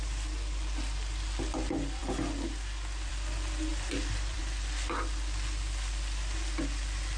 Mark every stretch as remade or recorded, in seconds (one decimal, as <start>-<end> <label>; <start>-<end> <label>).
0.0-3.7 recorded; 3.7-4.4 remade; 4.4-7.2 recorded